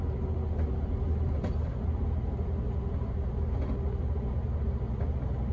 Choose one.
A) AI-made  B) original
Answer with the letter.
B